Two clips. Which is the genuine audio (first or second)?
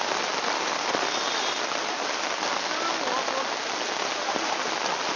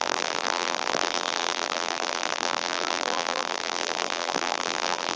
first